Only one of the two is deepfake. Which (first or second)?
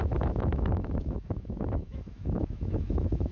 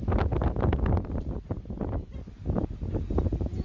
first